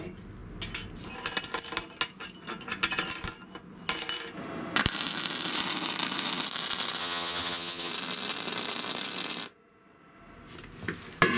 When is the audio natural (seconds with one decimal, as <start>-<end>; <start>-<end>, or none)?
0.0-7.0; 7.9-11.4